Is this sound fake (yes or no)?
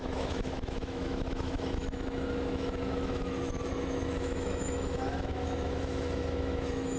yes